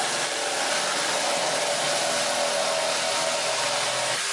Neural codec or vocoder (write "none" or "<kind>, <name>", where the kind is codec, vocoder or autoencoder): none